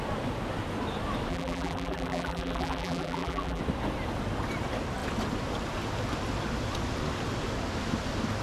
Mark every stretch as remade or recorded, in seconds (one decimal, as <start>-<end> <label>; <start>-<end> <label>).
0.0-1.3 recorded; 1.3-3.6 remade; 3.6-8.4 recorded